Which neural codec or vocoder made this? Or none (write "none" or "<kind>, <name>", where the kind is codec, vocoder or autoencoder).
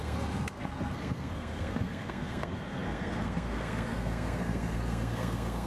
codec, SNAC